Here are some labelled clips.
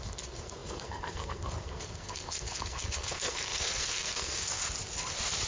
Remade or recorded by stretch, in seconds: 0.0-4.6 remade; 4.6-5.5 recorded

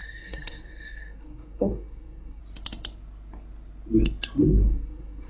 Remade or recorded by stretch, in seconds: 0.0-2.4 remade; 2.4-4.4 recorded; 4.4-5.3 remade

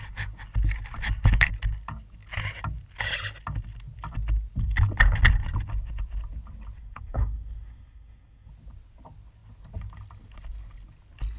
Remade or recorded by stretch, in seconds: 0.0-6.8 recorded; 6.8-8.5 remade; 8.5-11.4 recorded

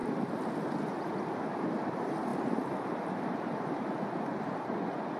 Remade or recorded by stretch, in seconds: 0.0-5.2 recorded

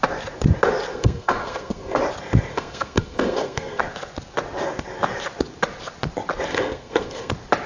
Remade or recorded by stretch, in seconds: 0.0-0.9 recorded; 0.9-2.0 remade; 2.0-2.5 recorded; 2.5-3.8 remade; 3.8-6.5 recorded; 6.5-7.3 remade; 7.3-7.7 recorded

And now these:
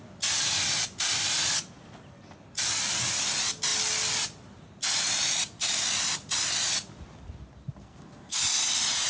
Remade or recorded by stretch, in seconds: 0.0-7.8 recorded; 7.8-8.4 remade; 8.4-9.1 recorded

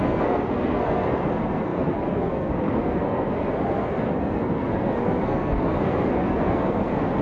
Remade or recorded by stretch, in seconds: 0.0-7.2 remade

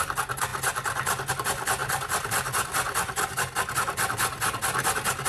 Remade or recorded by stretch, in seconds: 0.0-5.3 recorded